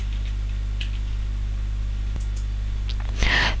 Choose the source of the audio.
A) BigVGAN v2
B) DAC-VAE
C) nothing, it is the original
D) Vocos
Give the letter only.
C